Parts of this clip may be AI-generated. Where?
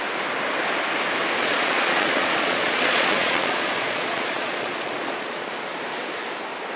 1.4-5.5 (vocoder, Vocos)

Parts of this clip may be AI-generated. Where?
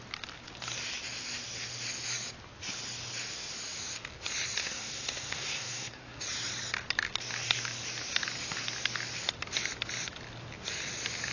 4.6-6.2 (codec, SNAC)